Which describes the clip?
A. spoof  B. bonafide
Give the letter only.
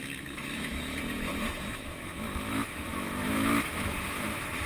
A